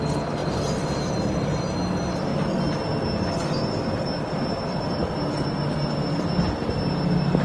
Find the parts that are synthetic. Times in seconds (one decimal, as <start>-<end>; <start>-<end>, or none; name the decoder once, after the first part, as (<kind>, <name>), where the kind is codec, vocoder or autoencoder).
0.4-1.6 (vocoder, BigVGAN v2)